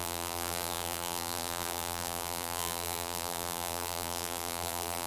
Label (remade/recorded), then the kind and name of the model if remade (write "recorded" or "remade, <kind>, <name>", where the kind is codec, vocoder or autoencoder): remade, vocoder, BigVGAN v2